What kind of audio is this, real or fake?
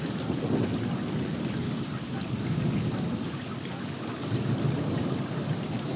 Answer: real